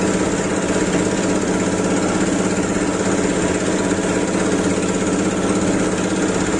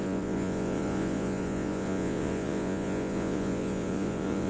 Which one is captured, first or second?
first